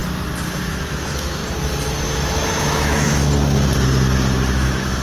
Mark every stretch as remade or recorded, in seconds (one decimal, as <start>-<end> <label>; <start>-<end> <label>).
0.0-0.7 recorded; 0.7-1.4 remade; 1.4-2.1 recorded; 2.1-3.2 remade; 3.2-4.5 recorded; 4.5-5.0 remade